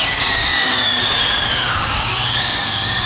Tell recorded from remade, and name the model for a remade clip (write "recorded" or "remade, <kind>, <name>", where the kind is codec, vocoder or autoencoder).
remade, codec, DAC